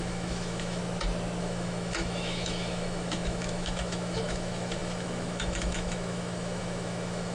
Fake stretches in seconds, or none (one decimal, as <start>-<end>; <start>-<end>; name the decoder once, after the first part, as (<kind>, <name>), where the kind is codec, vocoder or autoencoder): 0.0-0.8 (autoencoder, DAC-VAE); 1.4-7.3